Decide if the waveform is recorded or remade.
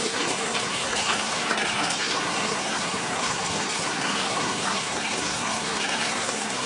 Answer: remade